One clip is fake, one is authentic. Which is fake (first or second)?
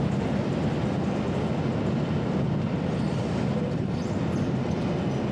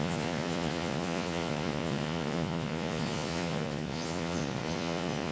second